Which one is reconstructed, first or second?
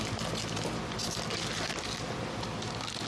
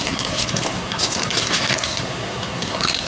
second